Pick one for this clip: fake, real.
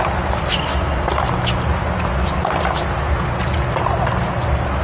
real